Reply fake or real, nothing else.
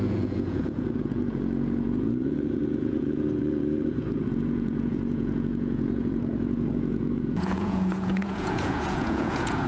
fake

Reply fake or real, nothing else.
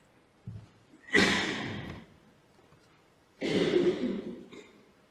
fake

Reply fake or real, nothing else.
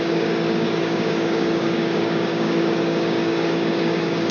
fake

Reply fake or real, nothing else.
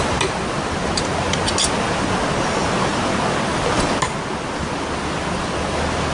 real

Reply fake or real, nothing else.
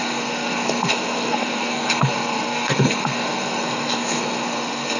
fake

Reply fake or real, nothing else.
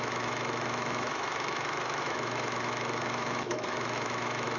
fake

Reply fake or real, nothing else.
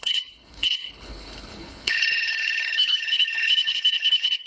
fake